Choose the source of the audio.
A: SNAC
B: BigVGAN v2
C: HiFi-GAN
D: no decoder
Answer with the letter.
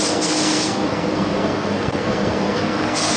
A